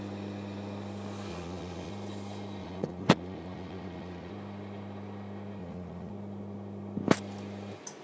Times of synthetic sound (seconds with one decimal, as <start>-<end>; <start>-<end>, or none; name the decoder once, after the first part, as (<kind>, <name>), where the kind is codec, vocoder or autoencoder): 1.3-1.9 (vocoder, Vocos); 2.6-4.3; 5.6-6.1